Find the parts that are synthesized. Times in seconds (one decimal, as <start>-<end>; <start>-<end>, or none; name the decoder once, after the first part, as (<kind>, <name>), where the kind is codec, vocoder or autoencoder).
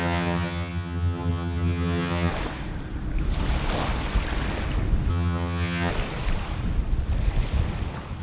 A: 0.0-2.3 (vocoder, HiFi-GAN); 5.1-5.9